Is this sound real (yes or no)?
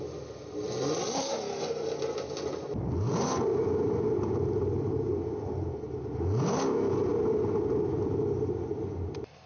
yes